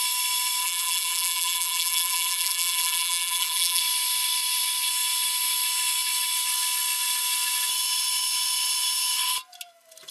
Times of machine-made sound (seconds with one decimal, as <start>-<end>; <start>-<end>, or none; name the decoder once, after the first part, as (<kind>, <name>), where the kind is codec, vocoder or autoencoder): 0.6-3.8 (vocoder, BigVGAN v2)